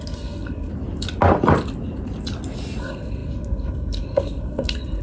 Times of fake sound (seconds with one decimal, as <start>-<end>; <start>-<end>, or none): 0.0-0.7; 2.8-5.0